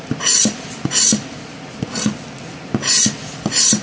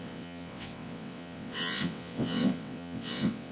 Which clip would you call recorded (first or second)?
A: first